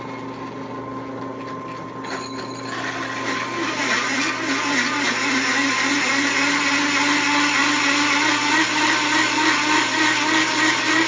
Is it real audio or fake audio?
real